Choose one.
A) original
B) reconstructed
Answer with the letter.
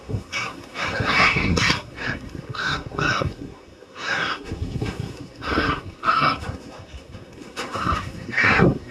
B